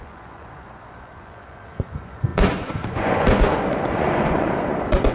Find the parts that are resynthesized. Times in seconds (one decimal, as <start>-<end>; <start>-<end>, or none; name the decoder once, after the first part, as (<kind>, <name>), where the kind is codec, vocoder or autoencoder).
0.0-5.1 (vocoder, Vocos)